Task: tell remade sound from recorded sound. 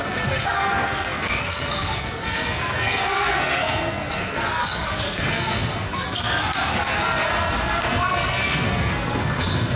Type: remade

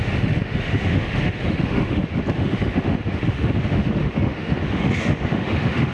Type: remade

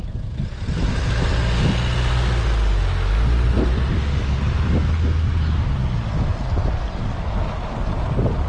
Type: recorded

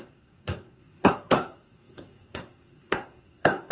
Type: remade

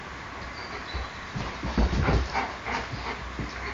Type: recorded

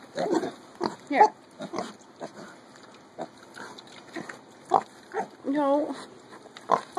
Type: recorded